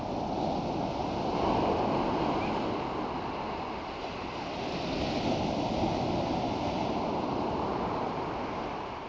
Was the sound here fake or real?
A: real